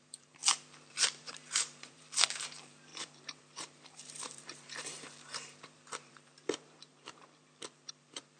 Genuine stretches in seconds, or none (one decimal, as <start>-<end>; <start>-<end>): 0.4-0.9